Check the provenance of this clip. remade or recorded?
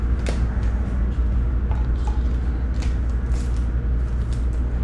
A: recorded